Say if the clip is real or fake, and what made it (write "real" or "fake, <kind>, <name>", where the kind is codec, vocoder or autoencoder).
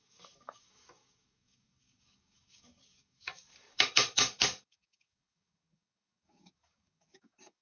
fake, codec, DAC